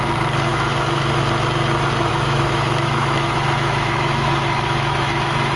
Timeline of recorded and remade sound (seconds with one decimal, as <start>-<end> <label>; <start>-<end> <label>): 0.0-0.5 recorded; 0.5-1.1 remade; 1.1-2.1 recorded; 2.1-5.6 remade